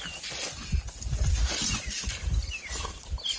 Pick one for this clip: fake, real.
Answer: real